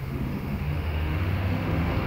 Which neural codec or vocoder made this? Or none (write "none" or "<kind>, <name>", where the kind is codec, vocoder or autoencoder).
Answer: autoencoder, DAC-VAE